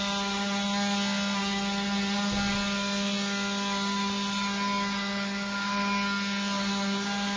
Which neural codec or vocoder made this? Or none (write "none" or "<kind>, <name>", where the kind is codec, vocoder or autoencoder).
none